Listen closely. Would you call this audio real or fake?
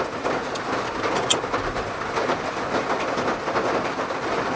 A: real